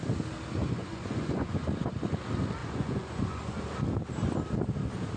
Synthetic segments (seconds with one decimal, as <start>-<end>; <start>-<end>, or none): 0.6-1.9; 2.6-3.6